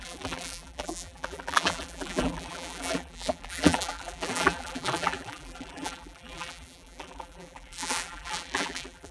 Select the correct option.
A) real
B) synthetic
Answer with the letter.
B